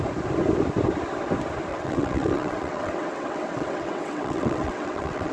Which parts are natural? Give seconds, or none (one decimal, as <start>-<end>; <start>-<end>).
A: 0.0-1.7